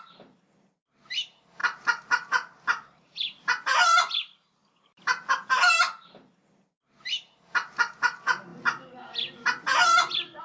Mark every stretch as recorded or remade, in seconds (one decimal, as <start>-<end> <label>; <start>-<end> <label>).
0.0-10.4 recorded